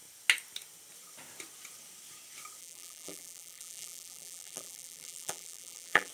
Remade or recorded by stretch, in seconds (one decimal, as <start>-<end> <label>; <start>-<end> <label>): 0.0-2.6 recorded; 2.6-6.1 remade